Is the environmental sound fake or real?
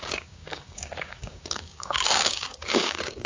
fake